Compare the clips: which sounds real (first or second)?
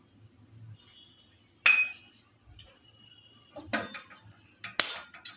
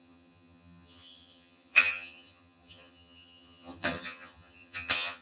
first